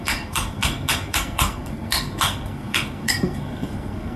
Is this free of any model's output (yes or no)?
no